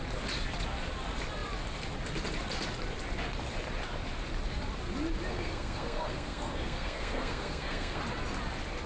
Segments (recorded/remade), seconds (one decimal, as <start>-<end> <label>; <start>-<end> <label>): 0.0-5.3 recorded; 5.3-8.0 remade; 8.0-8.9 recorded